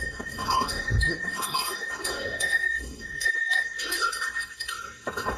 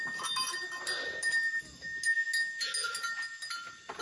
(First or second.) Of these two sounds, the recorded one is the second